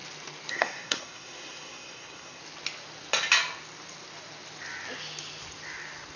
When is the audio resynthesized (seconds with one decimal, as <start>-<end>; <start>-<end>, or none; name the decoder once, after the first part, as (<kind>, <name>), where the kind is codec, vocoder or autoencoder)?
0.5-2.4 (codec, SNAC)